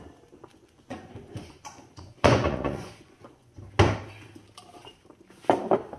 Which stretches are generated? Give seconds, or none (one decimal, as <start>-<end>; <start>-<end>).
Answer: 0.5-3.6